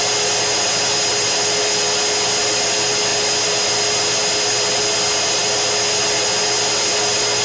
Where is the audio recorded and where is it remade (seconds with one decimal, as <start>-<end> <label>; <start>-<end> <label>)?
0.0-7.4 recorded